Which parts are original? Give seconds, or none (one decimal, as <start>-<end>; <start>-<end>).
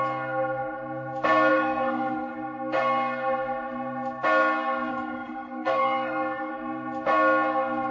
0.0-1.5; 2.3-4.9; 6.5-7.9